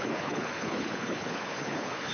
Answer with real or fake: fake